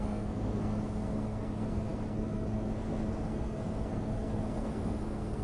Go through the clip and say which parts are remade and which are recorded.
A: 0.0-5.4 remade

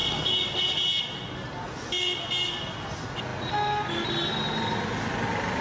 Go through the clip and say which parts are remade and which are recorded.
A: 0.0-5.6 recorded

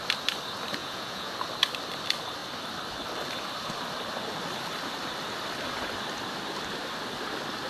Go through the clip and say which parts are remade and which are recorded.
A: 0.0-0.8 recorded; 0.8-1.3 remade; 1.3-7.7 recorded

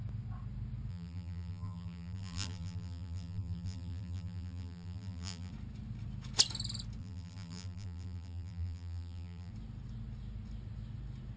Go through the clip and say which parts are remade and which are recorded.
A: 0.0-0.9 recorded; 0.9-5.5 remade; 5.5-7.0 recorded; 7.0-9.5 remade; 9.5-11.4 recorded